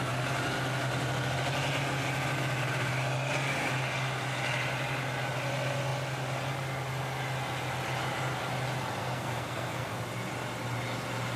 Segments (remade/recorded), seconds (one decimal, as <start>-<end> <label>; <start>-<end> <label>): 0.0-9.0 recorded; 9.0-9.9 remade; 9.9-11.4 recorded